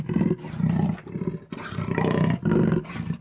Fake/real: real